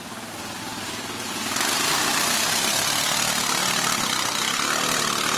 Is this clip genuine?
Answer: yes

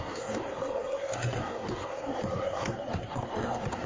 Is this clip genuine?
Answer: no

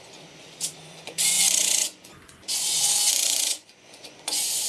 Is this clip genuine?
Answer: no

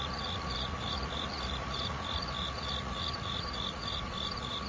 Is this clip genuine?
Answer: no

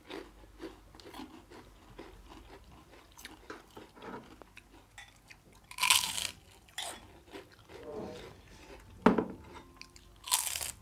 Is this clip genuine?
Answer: yes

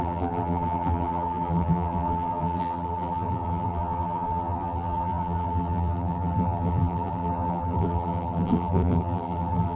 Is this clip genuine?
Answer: no